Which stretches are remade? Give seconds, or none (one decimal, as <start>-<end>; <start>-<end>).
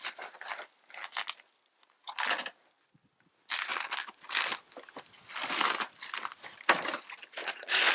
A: 7.4-7.9